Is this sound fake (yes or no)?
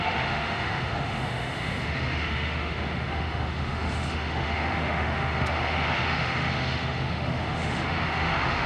yes